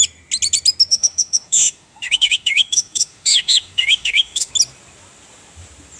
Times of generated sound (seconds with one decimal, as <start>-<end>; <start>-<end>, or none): 0.9-4.5